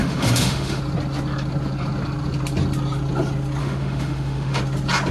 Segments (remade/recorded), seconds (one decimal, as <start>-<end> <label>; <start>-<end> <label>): 0.0-0.8 remade; 0.8-3.6 recorded; 3.6-4.6 remade; 4.6-5.1 recorded